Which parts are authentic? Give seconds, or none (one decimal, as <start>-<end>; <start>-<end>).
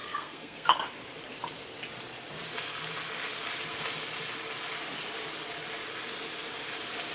0.8-7.1